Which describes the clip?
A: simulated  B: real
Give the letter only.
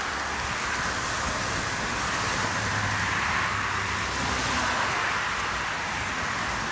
B